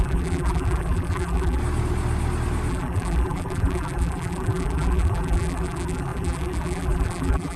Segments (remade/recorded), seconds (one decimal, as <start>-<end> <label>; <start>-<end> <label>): 0.0-1.6 remade; 1.6-2.7 recorded; 2.7-7.6 remade